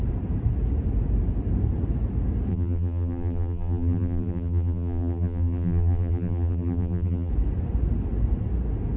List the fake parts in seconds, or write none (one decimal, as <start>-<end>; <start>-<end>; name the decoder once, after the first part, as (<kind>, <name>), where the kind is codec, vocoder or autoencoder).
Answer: 2.5-7.3 (vocoder, BigVGAN v2)